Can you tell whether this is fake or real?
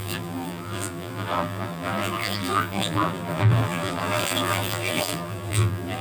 fake